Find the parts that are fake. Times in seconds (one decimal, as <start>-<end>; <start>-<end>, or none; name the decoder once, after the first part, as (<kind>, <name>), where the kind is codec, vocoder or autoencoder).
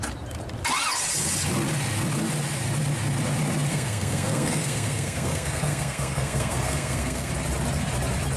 3.7-7.3 (codec, SNAC)